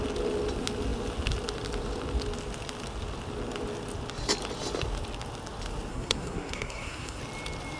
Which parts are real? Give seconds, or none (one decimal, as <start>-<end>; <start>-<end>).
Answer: 0.0-5.9; 7.2-7.8